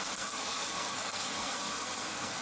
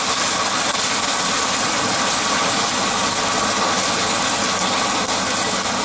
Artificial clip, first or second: first